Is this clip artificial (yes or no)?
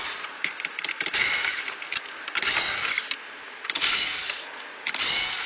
no